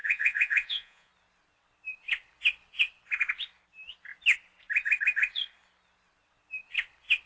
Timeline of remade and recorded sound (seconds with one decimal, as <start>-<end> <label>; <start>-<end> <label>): 0.0-1.1 remade; 1.1-7.3 recorded